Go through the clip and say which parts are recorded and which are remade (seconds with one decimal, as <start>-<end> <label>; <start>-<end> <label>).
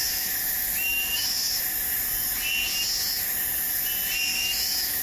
0.0-1.6 remade; 1.6-4.3 recorded; 4.3-5.0 remade